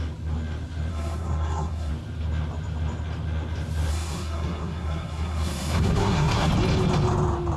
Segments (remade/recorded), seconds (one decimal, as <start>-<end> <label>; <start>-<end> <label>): 0.0-0.9 recorded; 0.9-1.9 remade; 1.9-3.9 recorded; 3.9-6.5 remade; 6.5-7.6 recorded